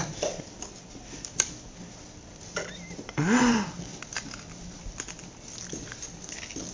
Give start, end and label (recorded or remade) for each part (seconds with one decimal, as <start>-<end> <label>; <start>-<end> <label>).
0.0-6.7 recorded